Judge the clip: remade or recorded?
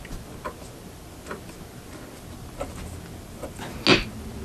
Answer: recorded